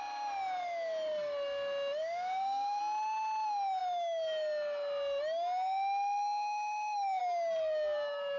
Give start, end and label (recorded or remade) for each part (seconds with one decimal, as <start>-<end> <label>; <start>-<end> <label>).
0.0-2.0 recorded; 2.0-2.8 remade; 2.8-8.4 recorded